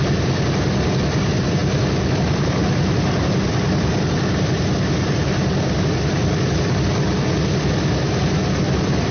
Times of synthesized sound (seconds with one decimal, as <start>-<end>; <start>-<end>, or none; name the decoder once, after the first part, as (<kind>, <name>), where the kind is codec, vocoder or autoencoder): none